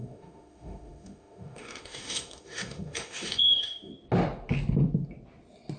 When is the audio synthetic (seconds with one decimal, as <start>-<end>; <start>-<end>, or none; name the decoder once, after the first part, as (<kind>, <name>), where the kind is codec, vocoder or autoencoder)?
0.0-3.9 (autoencoder, DAC-VAE)